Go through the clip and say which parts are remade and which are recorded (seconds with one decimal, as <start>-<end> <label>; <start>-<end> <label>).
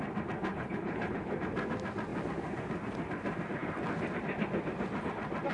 0.0-0.5 recorded; 0.5-1.3 remade; 1.3-5.5 recorded